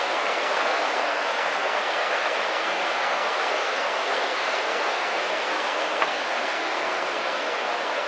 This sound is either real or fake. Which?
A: fake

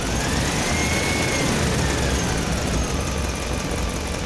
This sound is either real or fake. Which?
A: real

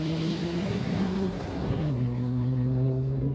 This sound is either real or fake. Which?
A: fake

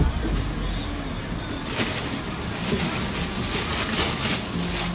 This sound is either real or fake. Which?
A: real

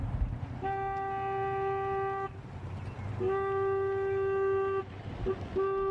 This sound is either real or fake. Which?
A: real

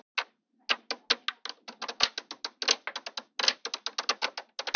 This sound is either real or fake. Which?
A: real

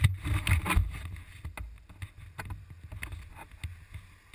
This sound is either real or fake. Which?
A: real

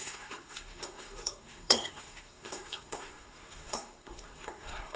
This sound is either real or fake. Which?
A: fake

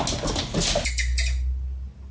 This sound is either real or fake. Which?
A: real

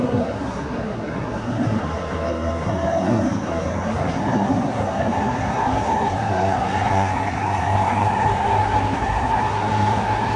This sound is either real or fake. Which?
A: fake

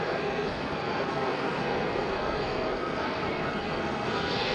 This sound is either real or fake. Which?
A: fake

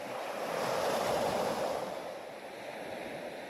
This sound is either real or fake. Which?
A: real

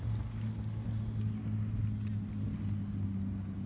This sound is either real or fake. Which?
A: real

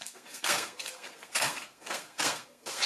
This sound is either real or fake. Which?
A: fake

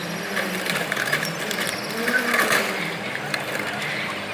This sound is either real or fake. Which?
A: real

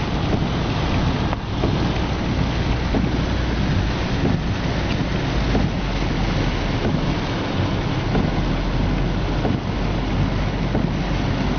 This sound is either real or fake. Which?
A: real